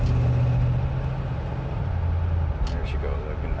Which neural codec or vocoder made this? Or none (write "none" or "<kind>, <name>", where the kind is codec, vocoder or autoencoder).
none